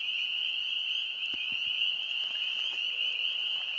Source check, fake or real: real